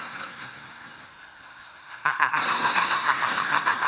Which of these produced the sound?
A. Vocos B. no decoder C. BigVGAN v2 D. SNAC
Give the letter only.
D